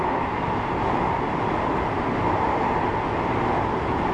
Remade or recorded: recorded